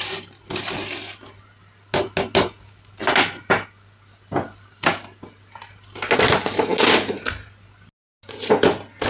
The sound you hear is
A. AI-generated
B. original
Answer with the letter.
B